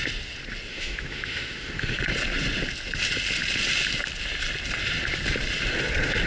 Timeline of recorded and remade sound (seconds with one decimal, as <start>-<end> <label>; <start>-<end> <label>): 0.0-0.7 recorded; 0.7-2.0 remade; 2.0-6.3 recorded